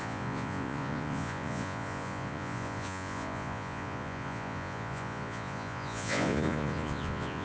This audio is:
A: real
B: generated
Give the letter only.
B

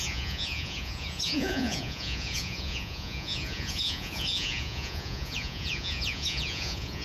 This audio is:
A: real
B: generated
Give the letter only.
B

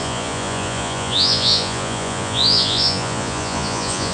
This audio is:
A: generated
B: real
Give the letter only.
A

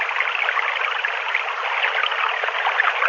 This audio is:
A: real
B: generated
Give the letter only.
A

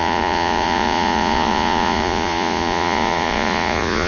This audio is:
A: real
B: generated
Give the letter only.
B